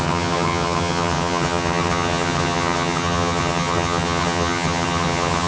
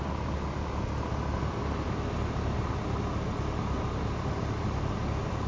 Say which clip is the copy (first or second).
first